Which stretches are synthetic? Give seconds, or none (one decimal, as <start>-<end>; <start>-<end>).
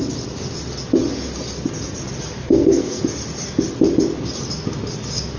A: 2.4-3.0